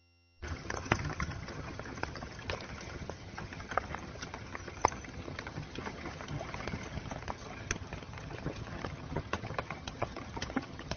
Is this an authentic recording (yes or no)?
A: no